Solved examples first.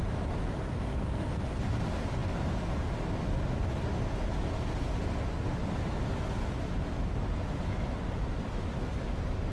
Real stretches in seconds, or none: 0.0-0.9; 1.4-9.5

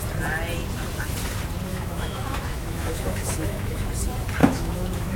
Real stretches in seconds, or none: 0.0-1.7; 3.9-4.4

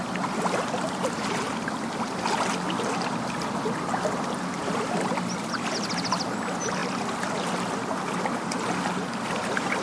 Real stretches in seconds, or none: 0.0-9.8

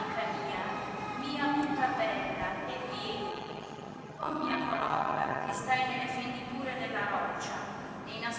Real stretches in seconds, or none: 0.0-3.3; 5.6-8.4

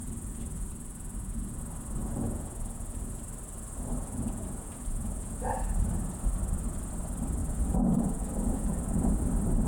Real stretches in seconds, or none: 1.6-2.0; 3.2-4.0; 5.5-7.4; 9.2-9.7